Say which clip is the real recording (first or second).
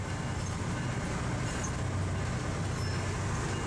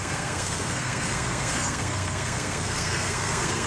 first